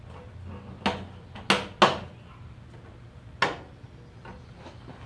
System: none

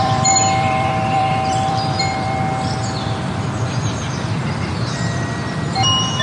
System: vocoder, BigVGAN v2